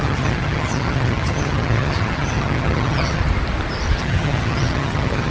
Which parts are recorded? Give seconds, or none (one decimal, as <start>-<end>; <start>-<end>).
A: 3.2-4.0